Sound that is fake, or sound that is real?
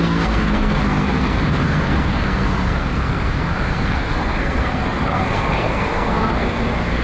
fake